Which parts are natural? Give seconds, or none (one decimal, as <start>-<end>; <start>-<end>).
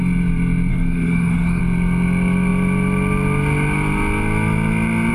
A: 0.0-0.7; 1.6-5.1